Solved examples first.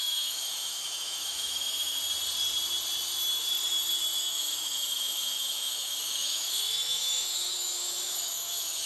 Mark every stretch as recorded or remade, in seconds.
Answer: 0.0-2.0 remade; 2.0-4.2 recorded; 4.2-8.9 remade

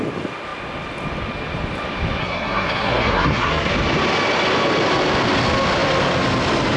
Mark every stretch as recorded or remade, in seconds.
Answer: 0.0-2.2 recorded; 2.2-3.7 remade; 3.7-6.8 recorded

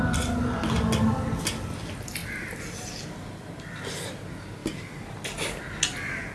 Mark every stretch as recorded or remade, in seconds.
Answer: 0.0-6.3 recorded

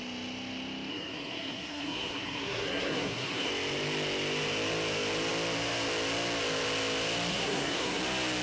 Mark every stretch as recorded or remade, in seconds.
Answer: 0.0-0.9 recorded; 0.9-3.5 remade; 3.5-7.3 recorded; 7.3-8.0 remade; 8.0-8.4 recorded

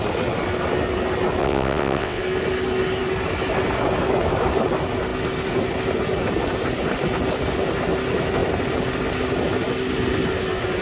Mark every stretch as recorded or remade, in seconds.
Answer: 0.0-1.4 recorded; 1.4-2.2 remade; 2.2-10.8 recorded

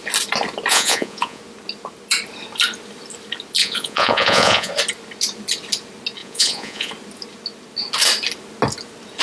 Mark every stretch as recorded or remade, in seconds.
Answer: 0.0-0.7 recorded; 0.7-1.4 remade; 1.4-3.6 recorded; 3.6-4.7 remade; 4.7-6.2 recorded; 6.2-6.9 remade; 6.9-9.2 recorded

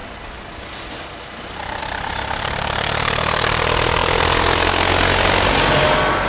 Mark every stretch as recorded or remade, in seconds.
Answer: 0.0-6.3 recorded